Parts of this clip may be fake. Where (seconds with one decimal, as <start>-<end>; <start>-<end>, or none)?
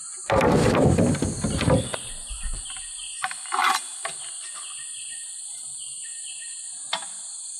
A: 0.0-1.2; 2.1-7.6